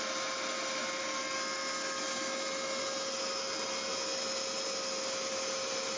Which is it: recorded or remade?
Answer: recorded